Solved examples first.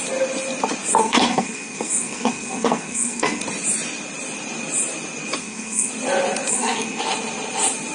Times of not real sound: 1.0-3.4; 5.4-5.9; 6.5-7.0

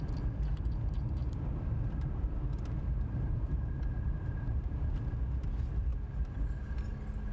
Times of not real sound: 1.2-4.9; 5.9-6.5

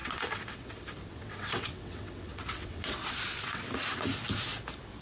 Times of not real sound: 0.0-0.7; 1.1-4.1

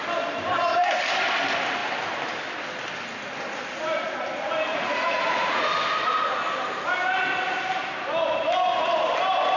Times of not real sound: 4.7-5.6